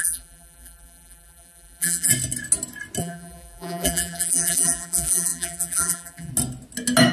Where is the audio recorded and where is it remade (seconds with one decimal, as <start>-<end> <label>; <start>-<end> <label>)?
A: 0.0-2.1 remade; 2.1-3.0 recorded; 3.0-6.3 remade; 6.3-7.1 recorded